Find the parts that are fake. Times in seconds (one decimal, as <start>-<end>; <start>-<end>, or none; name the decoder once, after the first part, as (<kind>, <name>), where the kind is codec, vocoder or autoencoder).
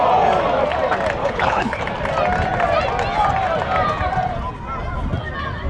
1.2-1.8 (codec, HILCodec)